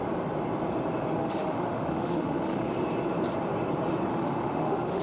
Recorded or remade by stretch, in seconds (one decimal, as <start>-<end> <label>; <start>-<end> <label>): 0.0-1.2 recorded; 1.2-2.7 remade; 2.7-4.1 recorded; 4.1-5.0 remade